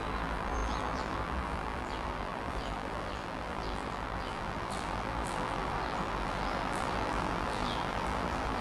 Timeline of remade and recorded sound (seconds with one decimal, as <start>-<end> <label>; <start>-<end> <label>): 0.0-8.6 remade

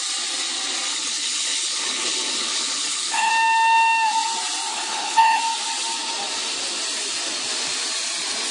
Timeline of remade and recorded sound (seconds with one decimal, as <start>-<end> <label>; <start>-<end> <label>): 0.0-0.9 recorded; 0.9-3.3 remade; 3.3-4.7 recorded; 4.7-5.4 remade; 5.4-8.5 recorded

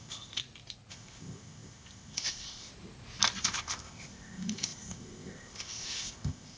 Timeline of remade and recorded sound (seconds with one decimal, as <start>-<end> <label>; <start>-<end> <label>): 0.0-0.4 remade; 0.4-0.9 recorded; 0.9-2.7 remade; 2.7-3.4 recorded; 3.4-6.6 remade

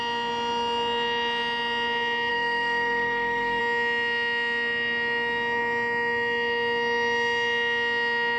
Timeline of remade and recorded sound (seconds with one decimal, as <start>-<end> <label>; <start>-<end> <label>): 0.0-2.3 recorded; 2.3-3.6 remade; 3.6-8.4 recorded

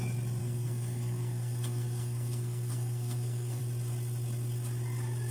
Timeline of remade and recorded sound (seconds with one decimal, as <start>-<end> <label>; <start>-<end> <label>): 0.0-0.4 recorded; 0.4-3.6 remade; 3.6-5.3 recorded

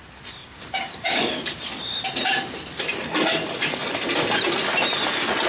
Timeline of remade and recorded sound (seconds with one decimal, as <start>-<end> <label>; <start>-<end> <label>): 0.0-0.4 recorded; 0.4-1.6 remade; 1.6-5.5 recorded

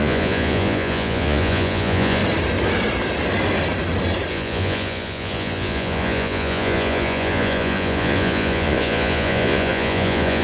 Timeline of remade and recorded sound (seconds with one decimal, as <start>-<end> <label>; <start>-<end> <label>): 0.0-2.2 remade; 2.2-4.3 recorded; 4.3-10.4 remade